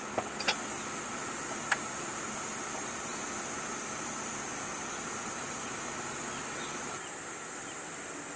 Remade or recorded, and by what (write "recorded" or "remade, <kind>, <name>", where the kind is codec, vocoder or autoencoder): recorded